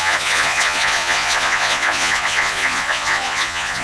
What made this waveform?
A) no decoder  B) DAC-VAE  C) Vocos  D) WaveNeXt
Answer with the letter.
C